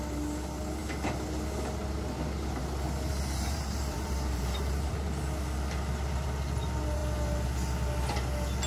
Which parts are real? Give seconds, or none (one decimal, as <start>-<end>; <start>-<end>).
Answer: 0.0-3.1; 4.9-8.7